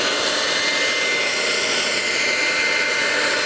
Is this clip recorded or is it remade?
recorded